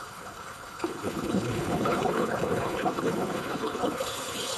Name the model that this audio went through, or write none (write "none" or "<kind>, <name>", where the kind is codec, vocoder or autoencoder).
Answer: codec, HILCodec